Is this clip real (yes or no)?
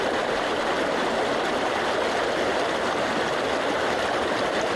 yes